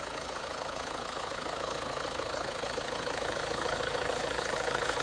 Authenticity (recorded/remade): remade